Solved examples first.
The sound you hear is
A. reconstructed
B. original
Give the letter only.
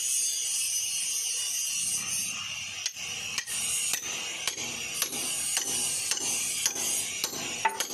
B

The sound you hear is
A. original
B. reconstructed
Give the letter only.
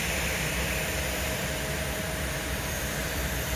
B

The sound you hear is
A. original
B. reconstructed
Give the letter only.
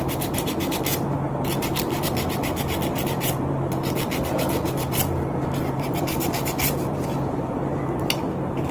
B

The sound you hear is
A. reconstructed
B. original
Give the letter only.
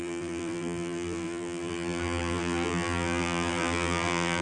A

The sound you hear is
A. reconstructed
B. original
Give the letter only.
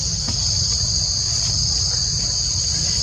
B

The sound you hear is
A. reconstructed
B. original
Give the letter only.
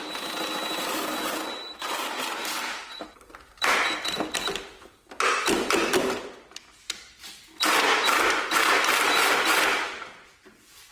A